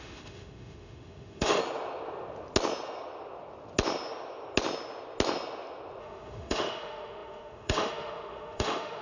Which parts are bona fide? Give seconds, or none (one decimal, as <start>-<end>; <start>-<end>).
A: 1.6-6.0